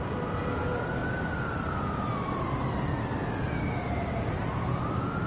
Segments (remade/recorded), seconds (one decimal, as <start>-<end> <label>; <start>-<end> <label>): 0.0-1.0 remade; 1.0-3.4 recorded; 3.4-5.3 remade